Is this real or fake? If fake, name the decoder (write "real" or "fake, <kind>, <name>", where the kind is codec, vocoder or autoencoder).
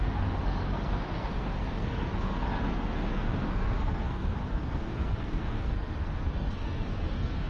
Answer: fake, codec, SNAC